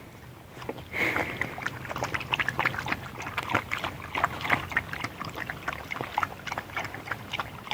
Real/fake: real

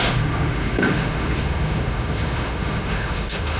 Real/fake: fake